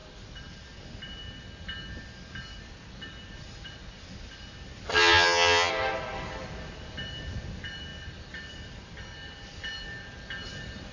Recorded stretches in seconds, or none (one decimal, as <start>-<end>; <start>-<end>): 0.0-4.9; 5.7-10.9